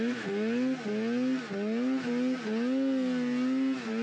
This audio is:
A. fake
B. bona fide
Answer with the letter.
B